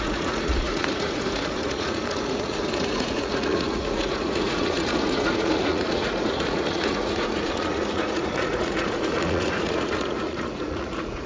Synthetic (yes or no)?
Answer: yes